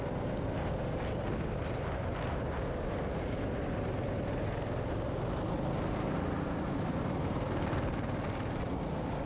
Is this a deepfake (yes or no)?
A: no